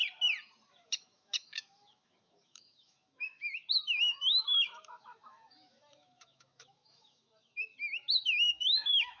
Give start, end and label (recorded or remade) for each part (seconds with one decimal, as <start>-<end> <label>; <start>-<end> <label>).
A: 0.0-0.7 recorded; 0.7-9.2 remade